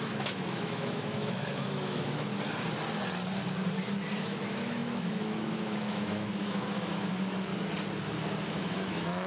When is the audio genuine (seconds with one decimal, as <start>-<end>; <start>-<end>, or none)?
2.3-4.2; 7.5-8.5